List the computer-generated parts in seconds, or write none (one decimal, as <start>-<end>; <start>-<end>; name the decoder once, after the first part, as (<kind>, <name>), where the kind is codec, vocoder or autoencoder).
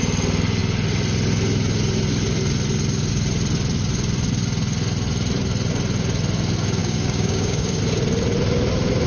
6.8-7.8 (codec, DAC)